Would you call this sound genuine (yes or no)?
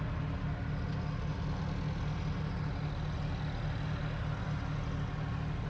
yes